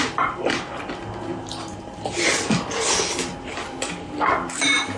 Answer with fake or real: real